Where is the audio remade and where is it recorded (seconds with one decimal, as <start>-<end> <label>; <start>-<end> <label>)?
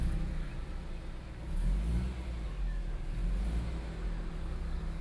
0.0-0.5 remade; 0.5-1.3 recorded; 1.3-1.9 remade; 1.9-2.5 recorded; 2.5-3.2 remade; 3.2-4.3 recorded; 4.3-5.0 remade